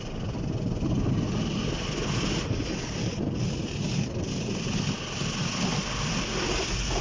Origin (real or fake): real